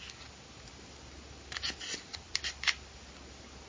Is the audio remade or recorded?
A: recorded